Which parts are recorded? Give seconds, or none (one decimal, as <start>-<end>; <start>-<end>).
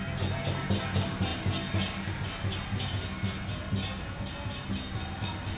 0.0-5.6